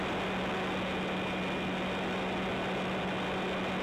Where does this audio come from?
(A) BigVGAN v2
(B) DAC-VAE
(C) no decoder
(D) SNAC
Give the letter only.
C